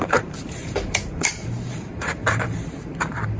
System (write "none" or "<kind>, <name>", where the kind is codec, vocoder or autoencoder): vocoder, BigVGAN v2